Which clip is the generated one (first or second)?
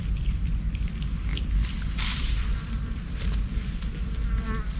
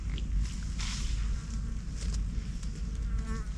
first